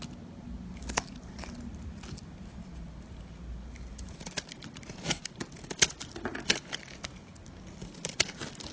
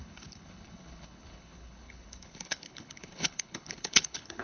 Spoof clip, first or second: second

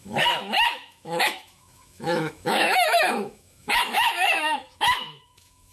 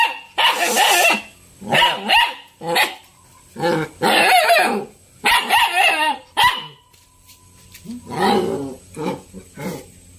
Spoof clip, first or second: first